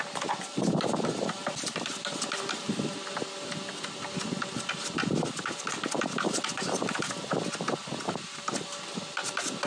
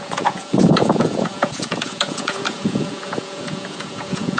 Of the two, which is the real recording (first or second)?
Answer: first